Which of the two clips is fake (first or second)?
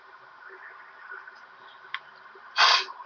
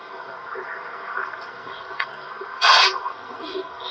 second